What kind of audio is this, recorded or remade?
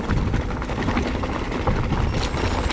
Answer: recorded